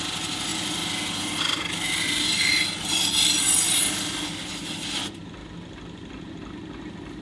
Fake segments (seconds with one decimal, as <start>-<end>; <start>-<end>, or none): none

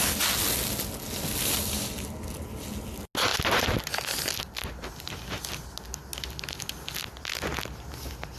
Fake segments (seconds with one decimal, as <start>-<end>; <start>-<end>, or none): none

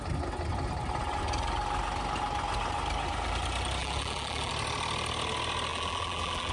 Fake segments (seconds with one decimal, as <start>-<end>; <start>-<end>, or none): 3.8-4.5; 5.7-6.5

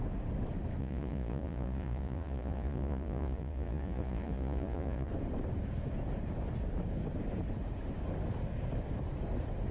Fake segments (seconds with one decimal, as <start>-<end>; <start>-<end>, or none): 0.8-5.1

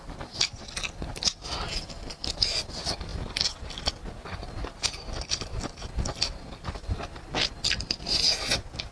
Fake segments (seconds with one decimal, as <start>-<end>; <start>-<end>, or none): none

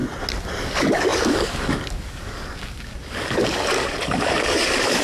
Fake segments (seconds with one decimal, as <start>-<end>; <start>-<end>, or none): 0.6-5.0

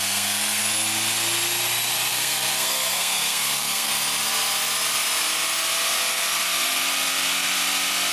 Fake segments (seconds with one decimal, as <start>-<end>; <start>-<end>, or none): 0.0-0.6; 2.1-3.9

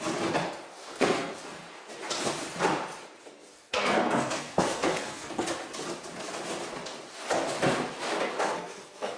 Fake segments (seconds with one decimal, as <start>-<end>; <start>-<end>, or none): 0.7-1.4; 3.5-5.3; 8.3-9.2